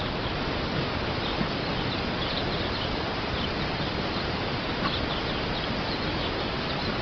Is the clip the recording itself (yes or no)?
no